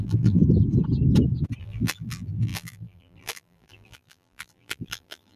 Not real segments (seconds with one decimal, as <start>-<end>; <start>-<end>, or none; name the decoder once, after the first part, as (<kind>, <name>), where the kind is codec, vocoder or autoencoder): 0.0-0.4 (vocoder, BigVGAN v2); 1.6-5.4